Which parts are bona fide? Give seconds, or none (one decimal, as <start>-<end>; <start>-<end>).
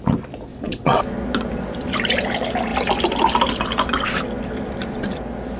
0.0-0.5; 1.0-5.6